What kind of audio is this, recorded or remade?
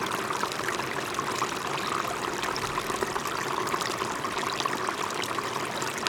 remade